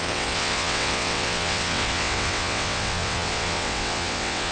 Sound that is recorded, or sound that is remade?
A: remade